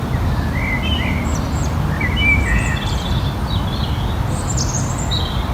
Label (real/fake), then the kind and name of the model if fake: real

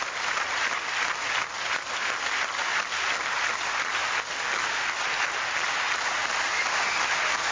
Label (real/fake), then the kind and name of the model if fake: real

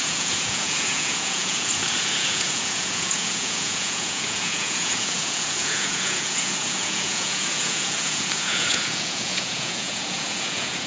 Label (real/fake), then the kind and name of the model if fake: fake, vocoder, Vocos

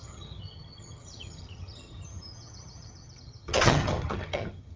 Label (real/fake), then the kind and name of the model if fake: fake, vocoder, HiFi-GAN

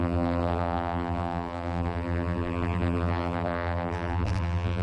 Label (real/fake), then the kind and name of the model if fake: fake, vocoder, BigVGAN v2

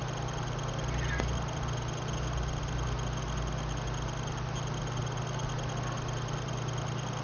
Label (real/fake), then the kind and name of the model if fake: real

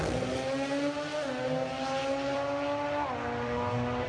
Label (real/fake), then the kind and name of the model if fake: real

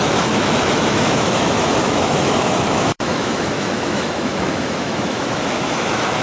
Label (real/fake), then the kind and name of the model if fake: fake, autoencoder, DAC-VAE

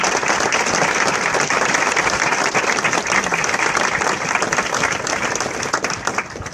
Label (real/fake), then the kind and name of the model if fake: real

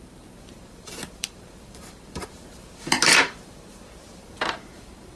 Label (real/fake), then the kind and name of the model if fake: fake, vocoder, BigVGAN v2